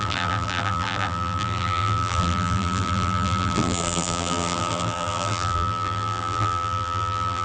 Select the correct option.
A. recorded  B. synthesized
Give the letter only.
B